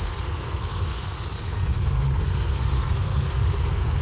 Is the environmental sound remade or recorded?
remade